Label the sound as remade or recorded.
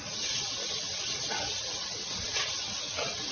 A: remade